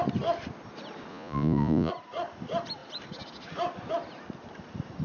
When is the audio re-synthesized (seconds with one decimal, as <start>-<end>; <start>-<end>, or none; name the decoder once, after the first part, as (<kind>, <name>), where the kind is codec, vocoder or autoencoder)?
1.1-1.9 (vocoder, Vocos)